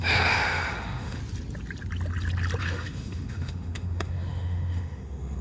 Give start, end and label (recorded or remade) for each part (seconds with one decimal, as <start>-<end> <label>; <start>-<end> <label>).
0.0-1.2 remade; 1.2-2.6 recorded; 2.6-5.4 remade